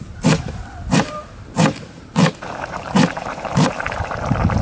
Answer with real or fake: fake